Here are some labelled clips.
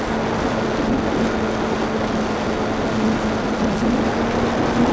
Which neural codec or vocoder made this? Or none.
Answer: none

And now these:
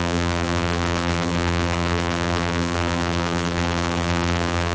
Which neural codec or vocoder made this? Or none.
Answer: vocoder, BigVGAN v2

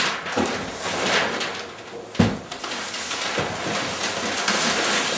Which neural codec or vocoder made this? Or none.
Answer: none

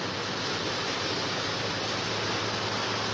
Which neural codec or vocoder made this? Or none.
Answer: none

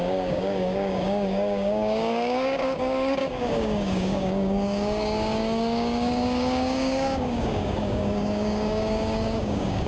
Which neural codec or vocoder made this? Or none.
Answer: codec, DAC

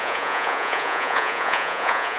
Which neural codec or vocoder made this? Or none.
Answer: vocoder, Vocos